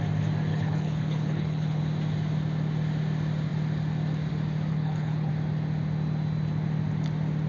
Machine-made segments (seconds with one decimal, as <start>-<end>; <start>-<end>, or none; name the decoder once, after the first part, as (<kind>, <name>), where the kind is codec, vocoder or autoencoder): 0.5-1.8 (codec, HILCodec); 4.7-5.3